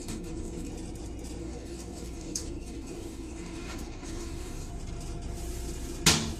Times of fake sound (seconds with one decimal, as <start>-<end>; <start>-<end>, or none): 0.0-0.7; 1.4-4.7